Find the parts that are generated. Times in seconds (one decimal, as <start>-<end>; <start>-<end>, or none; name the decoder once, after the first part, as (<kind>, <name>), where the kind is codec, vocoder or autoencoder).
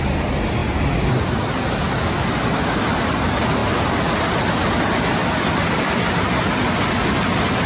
none